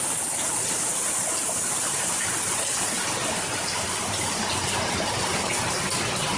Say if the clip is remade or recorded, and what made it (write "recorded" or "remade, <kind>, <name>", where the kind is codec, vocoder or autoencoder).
recorded